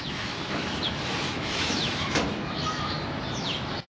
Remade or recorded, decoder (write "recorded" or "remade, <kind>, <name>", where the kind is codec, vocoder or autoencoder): remade, autoencoder, DAC-VAE